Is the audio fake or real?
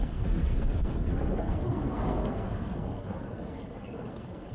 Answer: fake